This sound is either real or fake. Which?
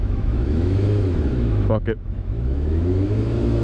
fake